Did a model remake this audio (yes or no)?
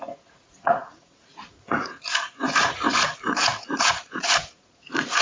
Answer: yes